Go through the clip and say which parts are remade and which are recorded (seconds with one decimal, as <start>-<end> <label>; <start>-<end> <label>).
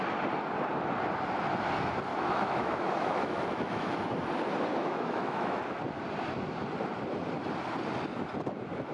0.0-2.1 recorded; 2.1-4.0 remade; 4.0-4.8 recorded; 4.8-5.6 remade; 5.6-8.9 recorded